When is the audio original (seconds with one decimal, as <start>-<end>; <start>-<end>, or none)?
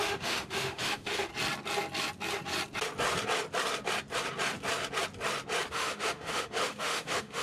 1.3-5.7